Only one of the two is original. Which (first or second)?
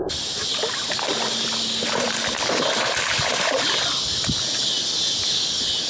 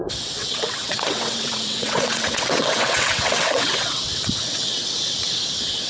first